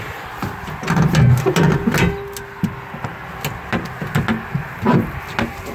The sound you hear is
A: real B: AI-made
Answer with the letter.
A